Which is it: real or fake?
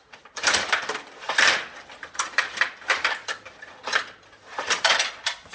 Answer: real